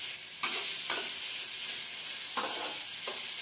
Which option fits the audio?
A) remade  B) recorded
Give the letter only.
B